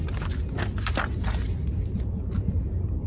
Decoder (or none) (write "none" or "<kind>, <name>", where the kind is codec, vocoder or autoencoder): none